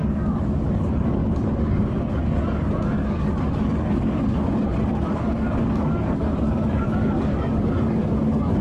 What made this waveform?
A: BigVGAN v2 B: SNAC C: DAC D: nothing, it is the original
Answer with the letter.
C